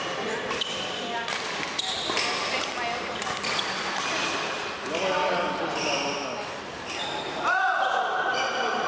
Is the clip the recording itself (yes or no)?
yes